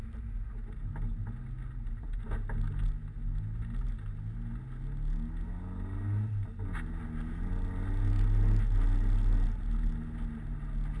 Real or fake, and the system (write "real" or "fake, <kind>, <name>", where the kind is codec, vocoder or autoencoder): real